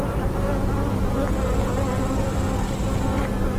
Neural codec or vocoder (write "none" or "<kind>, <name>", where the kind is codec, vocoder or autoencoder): none